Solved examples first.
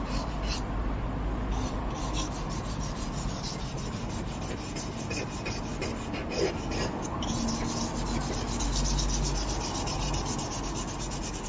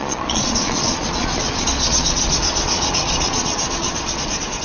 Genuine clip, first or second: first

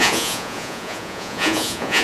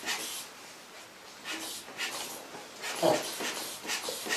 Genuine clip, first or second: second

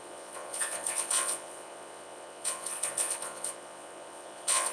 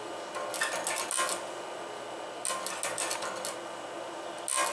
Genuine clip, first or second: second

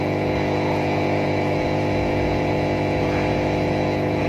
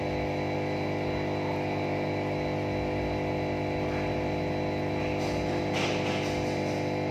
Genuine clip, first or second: second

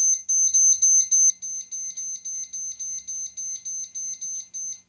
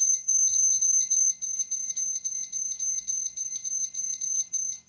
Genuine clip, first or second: first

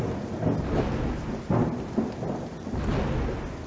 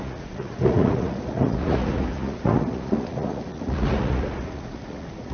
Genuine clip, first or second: first